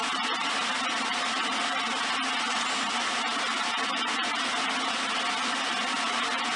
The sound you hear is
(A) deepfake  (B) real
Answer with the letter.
B